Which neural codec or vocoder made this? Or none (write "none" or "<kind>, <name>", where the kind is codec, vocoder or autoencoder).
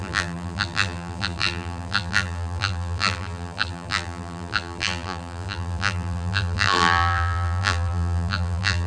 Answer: vocoder, BigVGAN v2